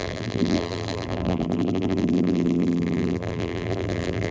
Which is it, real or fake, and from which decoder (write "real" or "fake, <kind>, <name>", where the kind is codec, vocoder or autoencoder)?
fake, vocoder, BigVGAN v2